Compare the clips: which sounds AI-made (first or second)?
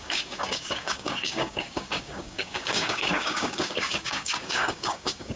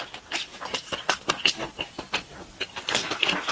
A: first